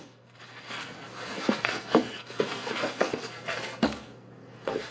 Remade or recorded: remade